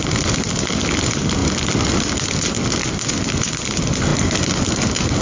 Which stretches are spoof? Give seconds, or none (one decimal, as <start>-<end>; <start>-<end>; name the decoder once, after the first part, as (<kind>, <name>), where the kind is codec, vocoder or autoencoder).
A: none